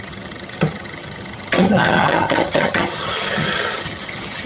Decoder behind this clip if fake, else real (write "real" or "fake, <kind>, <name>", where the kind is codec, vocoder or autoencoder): fake, vocoder, HiFi-GAN